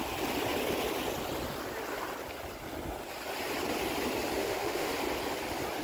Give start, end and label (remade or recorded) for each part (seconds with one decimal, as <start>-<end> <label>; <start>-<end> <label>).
0.0-4.4 recorded; 4.4-4.9 remade; 4.9-5.8 recorded